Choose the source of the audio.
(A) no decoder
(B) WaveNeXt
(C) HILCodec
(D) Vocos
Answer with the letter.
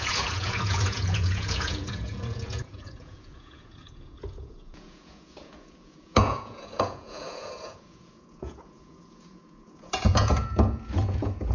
D